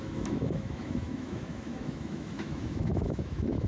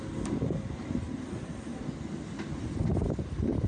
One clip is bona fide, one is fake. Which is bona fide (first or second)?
second